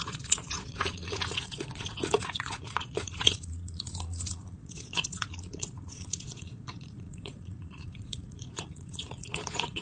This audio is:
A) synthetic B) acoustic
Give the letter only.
A